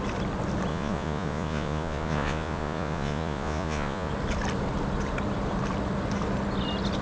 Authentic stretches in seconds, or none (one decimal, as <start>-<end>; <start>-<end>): 0.0-0.7; 4.1-7.0